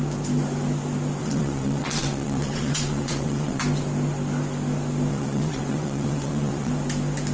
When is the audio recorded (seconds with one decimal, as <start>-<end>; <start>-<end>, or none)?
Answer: 0.0-1.2; 3.6-5.1; 6.7-7.3